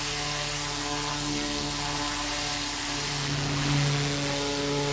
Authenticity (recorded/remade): recorded